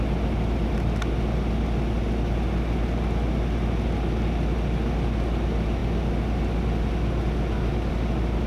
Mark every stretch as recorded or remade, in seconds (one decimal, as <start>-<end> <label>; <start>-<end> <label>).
0.0-8.5 recorded